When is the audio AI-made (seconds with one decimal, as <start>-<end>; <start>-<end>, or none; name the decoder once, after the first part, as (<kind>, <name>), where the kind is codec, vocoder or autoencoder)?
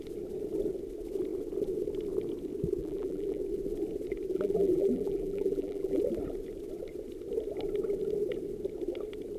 2.8-3.4 (vocoder, BigVGAN v2); 4.3-6.0